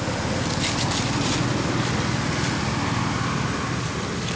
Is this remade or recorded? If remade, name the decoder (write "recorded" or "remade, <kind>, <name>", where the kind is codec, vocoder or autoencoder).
recorded